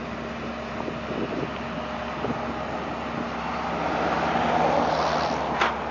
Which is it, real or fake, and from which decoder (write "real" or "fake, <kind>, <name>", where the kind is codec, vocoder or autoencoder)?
real